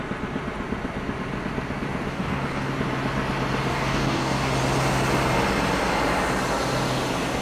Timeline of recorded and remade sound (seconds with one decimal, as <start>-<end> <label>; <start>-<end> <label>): 0.0-2.1 recorded; 2.1-2.7 remade; 2.7-3.7 recorded; 3.7-4.5 remade; 4.5-7.4 recorded